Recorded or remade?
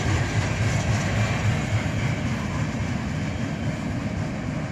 recorded